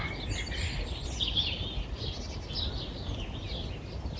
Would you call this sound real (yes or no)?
yes